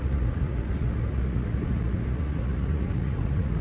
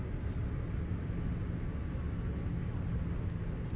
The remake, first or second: first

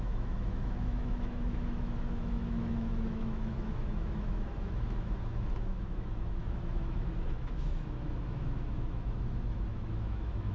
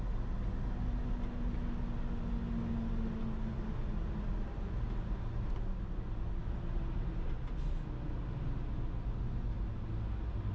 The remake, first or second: first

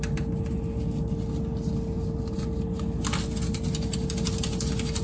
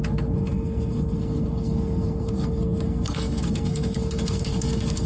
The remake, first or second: second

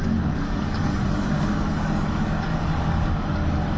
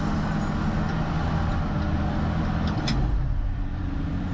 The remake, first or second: first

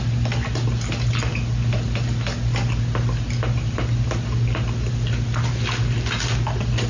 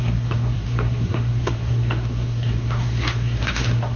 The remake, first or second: second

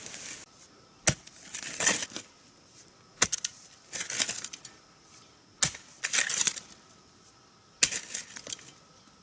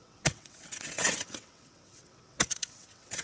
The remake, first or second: second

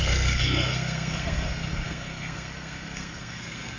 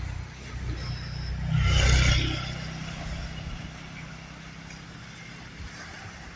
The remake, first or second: first